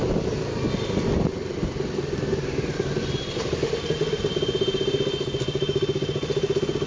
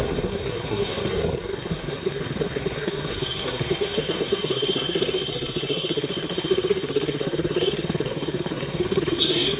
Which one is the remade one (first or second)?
second